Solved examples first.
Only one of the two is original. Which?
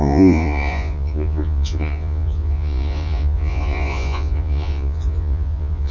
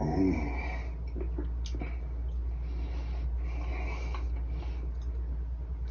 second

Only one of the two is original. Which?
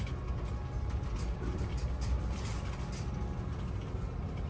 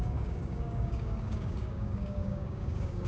first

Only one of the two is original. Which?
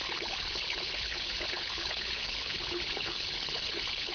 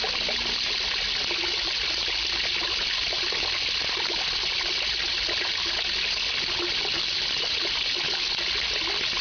second